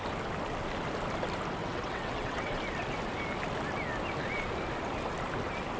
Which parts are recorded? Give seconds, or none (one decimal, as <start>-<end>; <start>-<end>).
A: 0.0-1.6; 2.6-5.8